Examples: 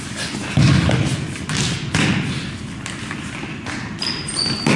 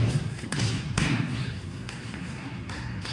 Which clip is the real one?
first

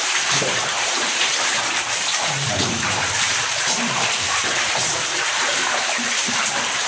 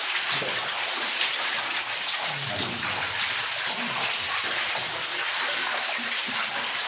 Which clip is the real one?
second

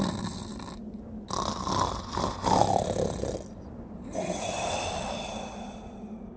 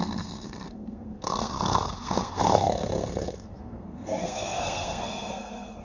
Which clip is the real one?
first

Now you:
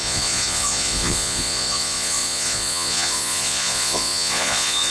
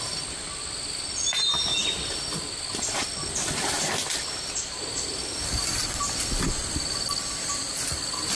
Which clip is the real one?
second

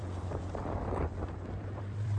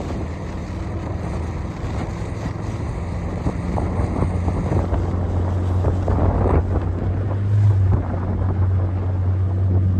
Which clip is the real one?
second